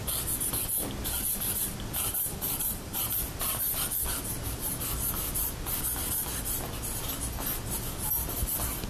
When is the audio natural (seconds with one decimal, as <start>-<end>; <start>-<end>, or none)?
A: 0.0-2.1; 3.0-8.9